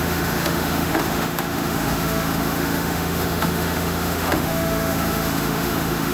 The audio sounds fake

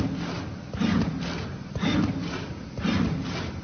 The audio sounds real